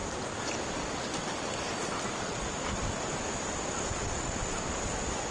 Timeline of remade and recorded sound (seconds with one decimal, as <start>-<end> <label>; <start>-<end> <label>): 0.0-5.3 recorded